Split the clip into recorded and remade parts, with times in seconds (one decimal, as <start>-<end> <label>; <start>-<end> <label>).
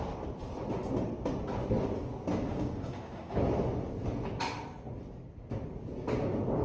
0.0-2.5 recorded; 2.5-3.4 remade; 3.4-6.6 recorded